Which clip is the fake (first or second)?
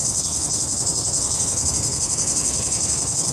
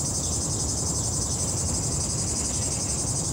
first